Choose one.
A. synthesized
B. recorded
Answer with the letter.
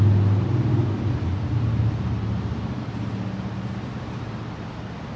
B